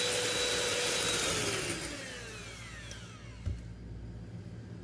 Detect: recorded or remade recorded